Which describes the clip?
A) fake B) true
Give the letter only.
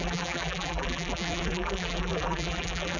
A